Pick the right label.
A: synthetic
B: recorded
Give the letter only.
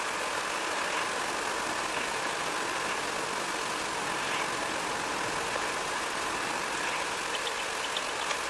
B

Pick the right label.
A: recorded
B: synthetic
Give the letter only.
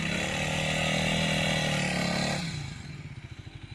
A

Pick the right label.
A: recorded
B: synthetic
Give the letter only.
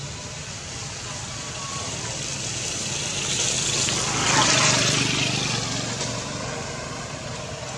A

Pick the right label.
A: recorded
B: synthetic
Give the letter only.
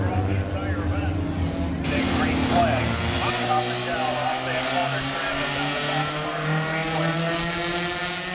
A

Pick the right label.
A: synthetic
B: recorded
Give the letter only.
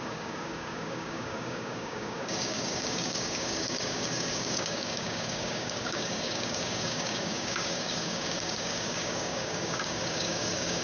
A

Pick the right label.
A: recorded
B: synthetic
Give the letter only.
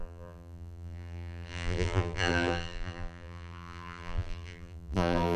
B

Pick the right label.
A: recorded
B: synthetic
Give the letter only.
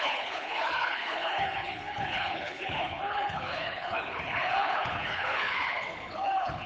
B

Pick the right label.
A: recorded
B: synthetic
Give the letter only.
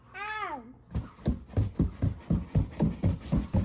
A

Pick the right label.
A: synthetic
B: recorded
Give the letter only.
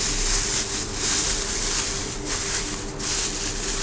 B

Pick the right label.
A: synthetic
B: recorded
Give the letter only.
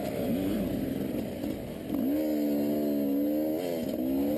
B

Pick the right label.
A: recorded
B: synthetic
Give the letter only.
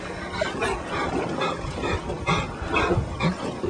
A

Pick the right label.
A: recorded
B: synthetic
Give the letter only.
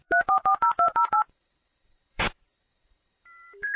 B